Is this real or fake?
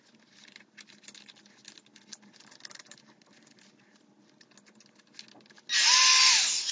real